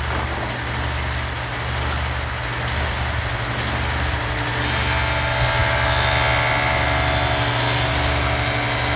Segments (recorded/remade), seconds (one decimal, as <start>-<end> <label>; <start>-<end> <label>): 0.0-9.0 recorded